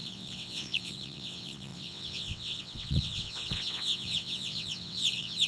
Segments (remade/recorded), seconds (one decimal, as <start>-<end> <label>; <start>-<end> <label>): 0.0-5.5 remade

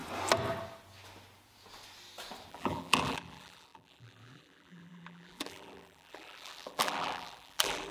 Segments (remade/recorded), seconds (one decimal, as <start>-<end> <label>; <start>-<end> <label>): 0.0-2.5 recorded; 2.5-7.9 remade

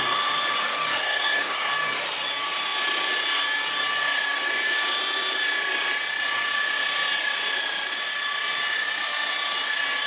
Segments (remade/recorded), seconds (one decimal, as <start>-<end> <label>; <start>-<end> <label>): 0.0-1.0 recorded; 1.0-1.7 remade; 1.7-10.1 recorded

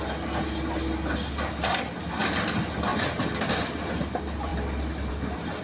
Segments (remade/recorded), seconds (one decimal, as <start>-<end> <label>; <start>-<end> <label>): 0.0-5.6 recorded

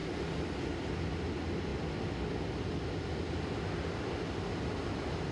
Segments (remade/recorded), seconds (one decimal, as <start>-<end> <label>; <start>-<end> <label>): 0.0-5.3 recorded

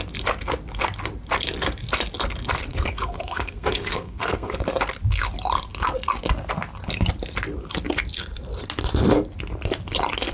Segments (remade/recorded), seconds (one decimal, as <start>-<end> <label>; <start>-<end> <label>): 0.0-2.7 recorded; 2.7-4.6 remade; 4.6-10.3 recorded

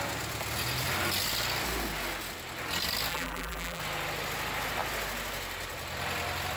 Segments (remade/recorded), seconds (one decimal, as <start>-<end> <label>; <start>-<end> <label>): 0.0-3.1 recorded; 3.1-3.8 remade; 3.8-6.6 recorded

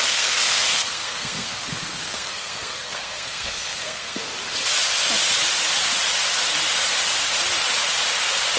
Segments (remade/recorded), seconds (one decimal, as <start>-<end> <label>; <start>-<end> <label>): 0.0-4.3 remade; 4.3-8.6 recorded